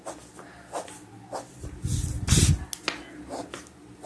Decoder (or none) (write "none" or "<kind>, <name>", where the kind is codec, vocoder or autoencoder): none